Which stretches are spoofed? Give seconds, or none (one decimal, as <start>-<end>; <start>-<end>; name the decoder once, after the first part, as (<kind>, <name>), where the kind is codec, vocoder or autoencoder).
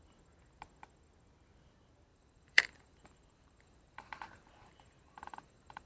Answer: 2.1-5.9 (vocoder, BigVGAN v2)